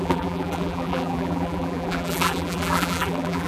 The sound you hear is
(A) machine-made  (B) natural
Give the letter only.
A